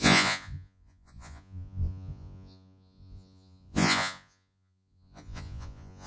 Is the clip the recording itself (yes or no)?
no